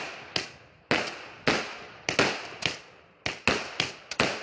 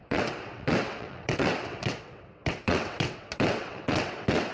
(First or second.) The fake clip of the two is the second